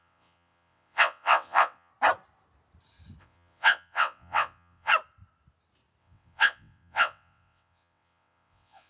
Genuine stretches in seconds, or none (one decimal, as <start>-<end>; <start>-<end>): 1.9-3.2; 4.9-6.0